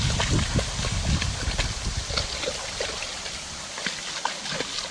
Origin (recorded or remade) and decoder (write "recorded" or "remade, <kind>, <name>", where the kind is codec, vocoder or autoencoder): recorded